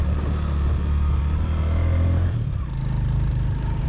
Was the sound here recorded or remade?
recorded